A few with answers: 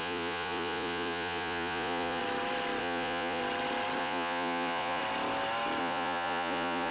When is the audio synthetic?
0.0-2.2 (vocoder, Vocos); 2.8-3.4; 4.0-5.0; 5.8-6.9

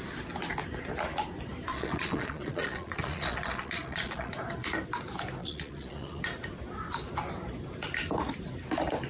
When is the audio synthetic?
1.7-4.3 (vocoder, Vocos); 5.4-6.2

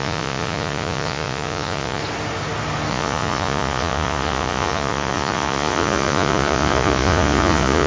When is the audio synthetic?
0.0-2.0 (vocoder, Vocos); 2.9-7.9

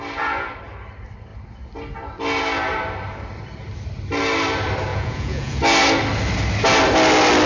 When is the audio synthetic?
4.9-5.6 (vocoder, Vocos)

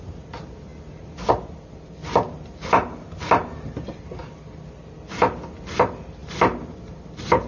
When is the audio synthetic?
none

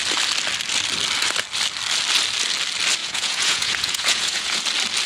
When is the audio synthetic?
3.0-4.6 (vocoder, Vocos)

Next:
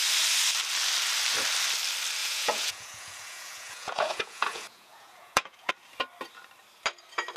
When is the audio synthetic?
2.2-5.7 (vocoder, Vocos)

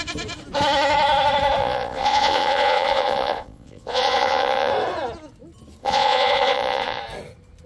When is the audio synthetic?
1.6-4.7 (vocoder, Vocos); 5.8-7.0